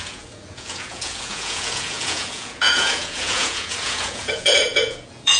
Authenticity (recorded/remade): remade